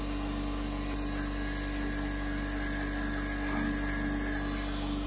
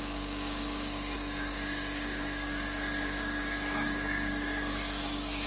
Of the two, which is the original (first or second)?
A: first